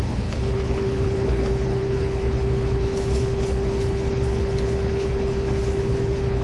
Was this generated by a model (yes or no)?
yes